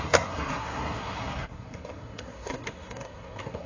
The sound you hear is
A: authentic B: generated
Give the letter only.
B